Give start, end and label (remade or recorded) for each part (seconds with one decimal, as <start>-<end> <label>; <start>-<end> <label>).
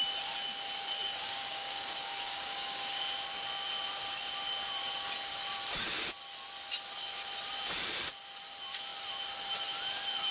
0.0-1.0 recorded; 1.0-3.0 remade; 3.0-10.3 recorded